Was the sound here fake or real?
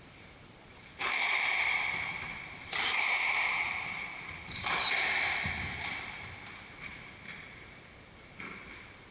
fake